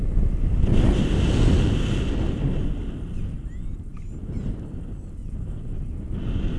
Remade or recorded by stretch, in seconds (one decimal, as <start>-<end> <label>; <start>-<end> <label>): 0.0-6.6 recorded